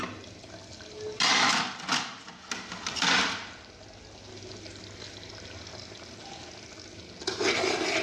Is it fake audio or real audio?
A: real